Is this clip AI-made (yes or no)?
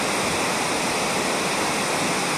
no